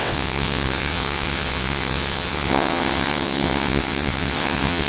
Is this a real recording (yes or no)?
no